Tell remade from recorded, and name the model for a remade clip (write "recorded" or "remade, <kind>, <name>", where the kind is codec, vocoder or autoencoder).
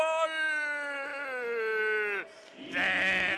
recorded